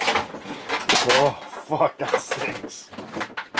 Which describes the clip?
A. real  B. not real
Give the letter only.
A